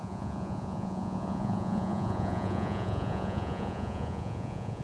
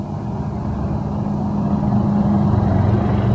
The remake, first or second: first